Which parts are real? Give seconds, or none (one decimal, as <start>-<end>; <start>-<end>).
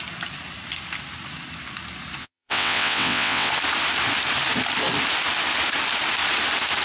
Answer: 0.0-2.2; 3.5-6.8